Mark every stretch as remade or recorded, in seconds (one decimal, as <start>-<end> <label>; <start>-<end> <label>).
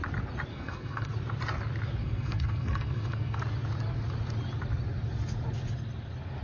0.0-0.5 recorded; 0.5-1.1 remade; 1.1-2.0 recorded; 2.0-3.4 remade; 3.4-6.4 recorded